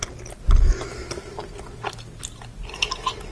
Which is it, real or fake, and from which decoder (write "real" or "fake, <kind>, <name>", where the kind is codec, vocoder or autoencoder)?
real